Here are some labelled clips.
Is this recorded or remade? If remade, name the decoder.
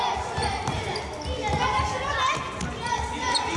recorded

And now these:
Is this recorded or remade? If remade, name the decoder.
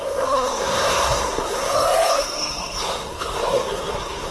remade, codec, SNAC